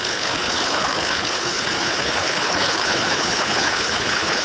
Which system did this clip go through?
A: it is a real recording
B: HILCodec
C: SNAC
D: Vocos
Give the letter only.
B